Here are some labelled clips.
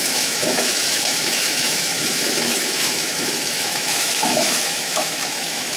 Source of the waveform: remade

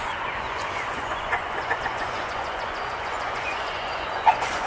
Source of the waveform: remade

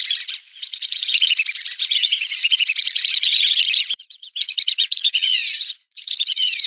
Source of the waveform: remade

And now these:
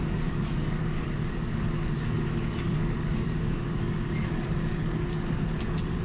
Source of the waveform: remade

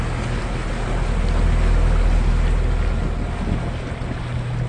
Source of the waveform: recorded